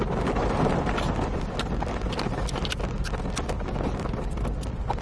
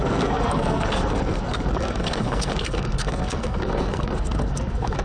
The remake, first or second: second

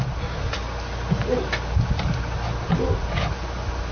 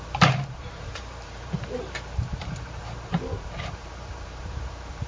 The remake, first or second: second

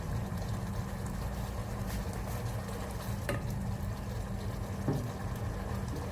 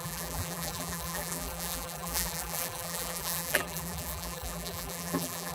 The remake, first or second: second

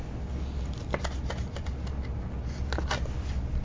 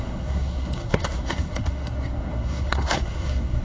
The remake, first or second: second